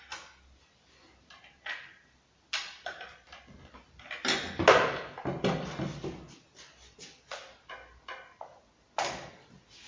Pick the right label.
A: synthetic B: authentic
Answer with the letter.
B